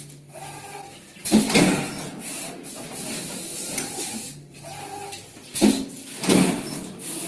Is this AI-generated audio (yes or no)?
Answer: no